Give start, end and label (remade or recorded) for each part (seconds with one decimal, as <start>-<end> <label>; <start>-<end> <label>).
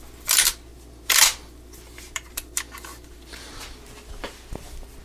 0.0-5.0 recorded